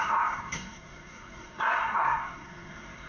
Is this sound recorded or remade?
remade